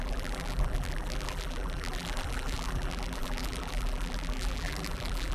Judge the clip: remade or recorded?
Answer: remade